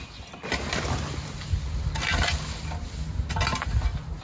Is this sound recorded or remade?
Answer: recorded